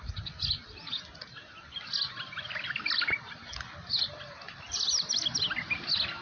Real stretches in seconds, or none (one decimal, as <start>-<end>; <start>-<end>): 0.0-6.2